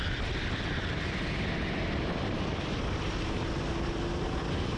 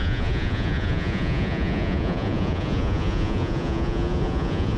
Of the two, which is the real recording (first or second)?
first